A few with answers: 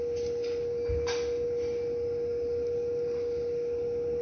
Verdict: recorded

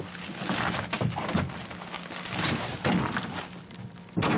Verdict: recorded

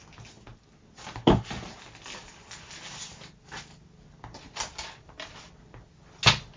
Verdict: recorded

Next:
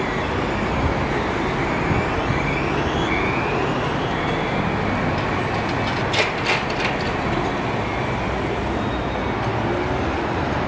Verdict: recorded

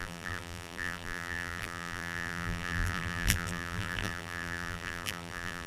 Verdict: remade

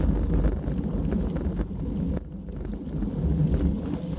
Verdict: recorded